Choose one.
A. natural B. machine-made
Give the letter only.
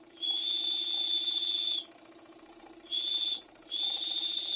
B